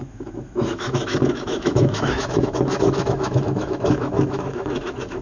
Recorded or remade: remade